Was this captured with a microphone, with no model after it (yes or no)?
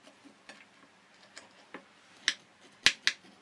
yes